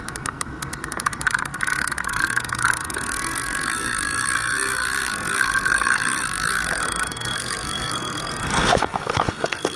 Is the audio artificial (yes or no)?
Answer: yes